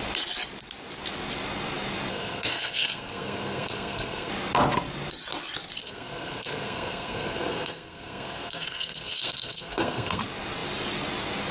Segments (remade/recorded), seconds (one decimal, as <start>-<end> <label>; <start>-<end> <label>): 0.0-2.1 recorded; 2.1-4.3 remade; 4.3-5.8 recorded; 5.8-10.2 remade; 10.2-11.5 recorded